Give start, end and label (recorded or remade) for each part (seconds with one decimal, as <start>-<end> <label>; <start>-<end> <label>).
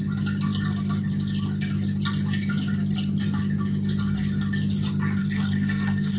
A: 0.0-5.2 recorded; 5.2-6.2 remade